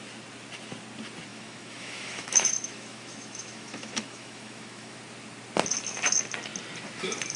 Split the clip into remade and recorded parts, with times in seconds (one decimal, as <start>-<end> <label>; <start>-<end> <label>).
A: 0.0-1.3 recorded; 1.3-5.0 remade; 5.0-7.4 recorded